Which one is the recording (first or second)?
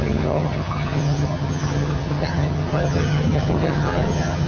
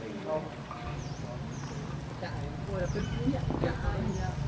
second